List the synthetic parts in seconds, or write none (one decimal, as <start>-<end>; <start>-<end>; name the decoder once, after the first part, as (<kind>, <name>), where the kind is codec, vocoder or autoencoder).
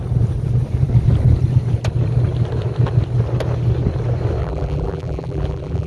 4.4-5.9 (vocoder, BigVGAN v2)